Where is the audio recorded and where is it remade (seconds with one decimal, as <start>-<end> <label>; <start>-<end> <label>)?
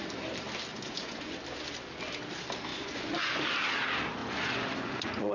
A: 0.0-0.7 recorded; 0.7-1.4 remade; 1.4-2.7 recorded; 2.7-3.3 remade; 3.3-4.2 recorded; 4.2-5.3 remade